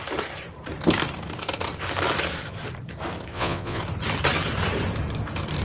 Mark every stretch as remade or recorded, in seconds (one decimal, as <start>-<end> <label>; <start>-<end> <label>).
0.0-3.3 recorded; 3.3-3.8 remade; 3.8-5.6 recorded